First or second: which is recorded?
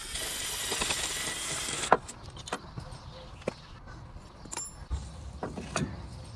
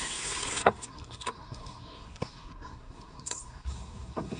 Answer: first